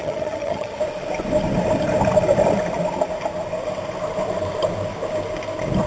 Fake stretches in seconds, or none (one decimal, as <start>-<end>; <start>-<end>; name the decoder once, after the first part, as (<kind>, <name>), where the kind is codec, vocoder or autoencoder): 0.0-0.8 (vocoder, HiFi-GAN)